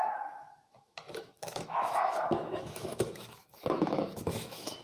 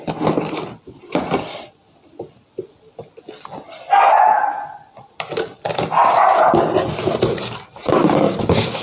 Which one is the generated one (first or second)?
first